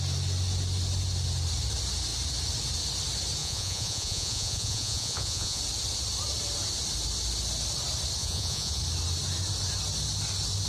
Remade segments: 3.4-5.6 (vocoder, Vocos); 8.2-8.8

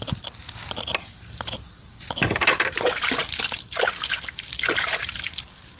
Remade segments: none

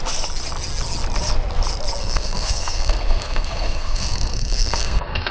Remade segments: 2.0-5.3 (codec, SNAC)

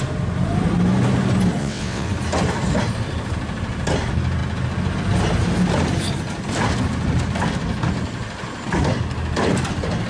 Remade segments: 1.6-2.1 (vocoder, WaveNeXt)

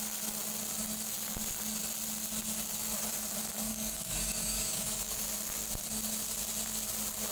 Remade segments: 3.7-5.2 (codec, DAC)